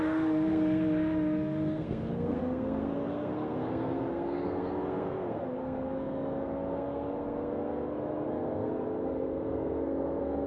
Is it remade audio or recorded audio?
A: remade